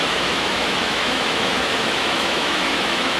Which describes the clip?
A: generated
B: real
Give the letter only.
A